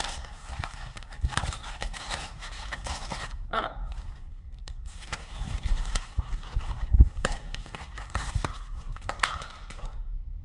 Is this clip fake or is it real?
fake